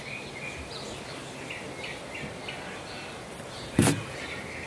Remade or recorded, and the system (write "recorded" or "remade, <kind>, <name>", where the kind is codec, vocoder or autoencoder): recorded